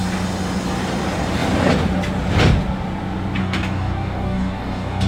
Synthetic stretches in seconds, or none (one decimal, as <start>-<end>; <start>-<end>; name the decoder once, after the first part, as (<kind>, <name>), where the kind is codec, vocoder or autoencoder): 3.4-5.1 (codec, DAC)